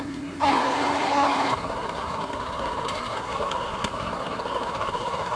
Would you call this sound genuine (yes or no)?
no